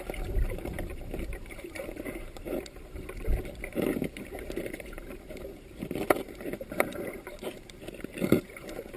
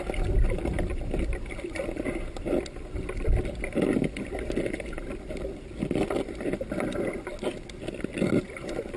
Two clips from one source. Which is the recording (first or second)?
second